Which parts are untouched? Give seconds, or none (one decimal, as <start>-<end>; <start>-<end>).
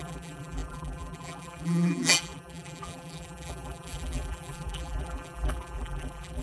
none